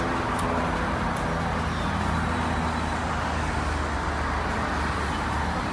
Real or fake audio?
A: real